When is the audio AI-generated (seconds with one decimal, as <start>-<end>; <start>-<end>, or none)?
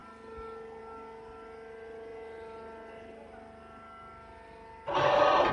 none